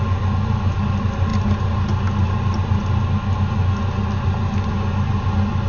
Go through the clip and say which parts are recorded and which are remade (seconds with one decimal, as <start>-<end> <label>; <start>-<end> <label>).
0.0-5.7 recorded